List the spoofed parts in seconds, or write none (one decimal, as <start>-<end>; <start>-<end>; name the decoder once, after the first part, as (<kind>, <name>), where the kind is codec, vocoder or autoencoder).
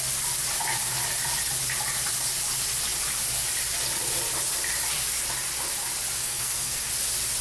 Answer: 6.2-6.9 (codec, SNAC)